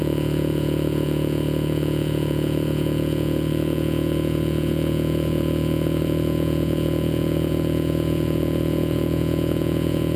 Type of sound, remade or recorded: remade